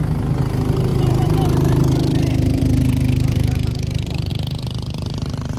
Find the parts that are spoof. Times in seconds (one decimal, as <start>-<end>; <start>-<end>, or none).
0.9-4.3